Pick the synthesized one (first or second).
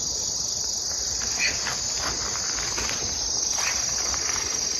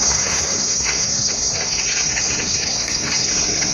second